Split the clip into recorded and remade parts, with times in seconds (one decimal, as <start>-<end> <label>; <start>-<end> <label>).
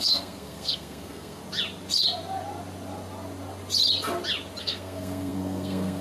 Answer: 0.0-1.4 remade; 1.4-4.6 recorded; 4.6-6.0 remade